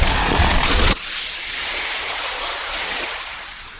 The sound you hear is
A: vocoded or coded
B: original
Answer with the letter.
A